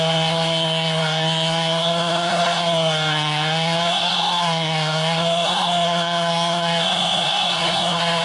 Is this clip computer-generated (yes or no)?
yes